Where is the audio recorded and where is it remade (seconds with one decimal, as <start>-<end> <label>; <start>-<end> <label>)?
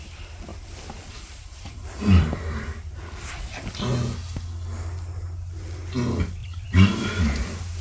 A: 0.0-0.5 recorded; 0.5-3.4 remade; 3.4-6.4 recorded; 6.4-7.1 remade; 7.1-7.8 recorded